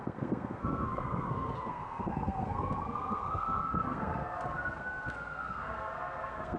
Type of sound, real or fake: fake